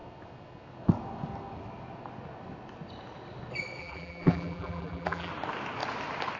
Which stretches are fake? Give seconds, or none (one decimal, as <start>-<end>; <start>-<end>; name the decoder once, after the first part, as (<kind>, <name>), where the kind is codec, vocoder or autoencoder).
3.8-5.3 (vocoder, BigVGAN v2)